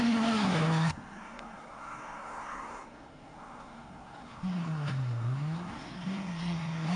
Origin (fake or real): fake